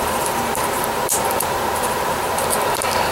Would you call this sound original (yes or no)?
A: no